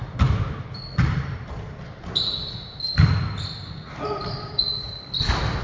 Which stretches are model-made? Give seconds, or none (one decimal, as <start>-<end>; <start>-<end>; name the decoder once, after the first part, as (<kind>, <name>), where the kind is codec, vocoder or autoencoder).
none